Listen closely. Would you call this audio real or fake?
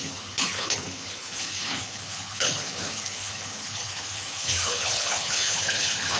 fake